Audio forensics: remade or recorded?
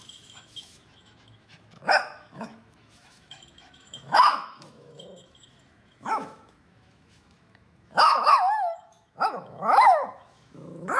remade